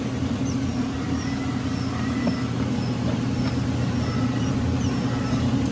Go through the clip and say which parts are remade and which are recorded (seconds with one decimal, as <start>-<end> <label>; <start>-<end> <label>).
0.0-0.4 remade; 0.4-3.8 recorded; 3.8-5.7 remade